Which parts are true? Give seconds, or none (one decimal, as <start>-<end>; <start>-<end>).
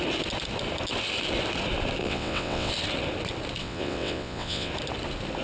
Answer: 0.0-2.0; 2.7-3.6; 4.7-5.4